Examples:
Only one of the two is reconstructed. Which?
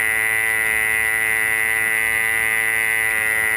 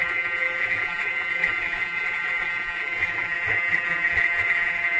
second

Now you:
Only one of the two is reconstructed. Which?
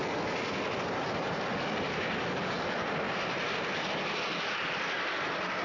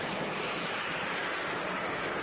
second